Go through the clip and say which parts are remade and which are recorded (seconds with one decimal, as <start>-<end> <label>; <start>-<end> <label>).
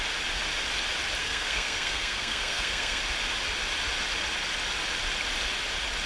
0.0-1.2 recorded; 1.2-3.0 remade; 3.0-6.1 recorded